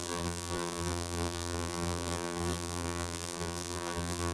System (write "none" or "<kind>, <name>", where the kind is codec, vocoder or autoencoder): vocoder, BigVGAN v2